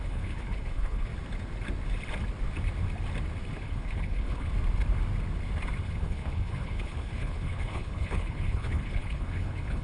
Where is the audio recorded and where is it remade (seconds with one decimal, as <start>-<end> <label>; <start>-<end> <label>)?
0.0-1.1 remade; 1.1-3.5 recorded; 3.5-4.5 remade; 4.5-5.8 recorded; 5.8-9.8 remade